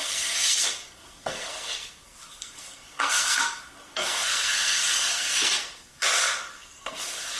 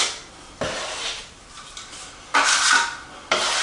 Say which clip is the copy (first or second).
first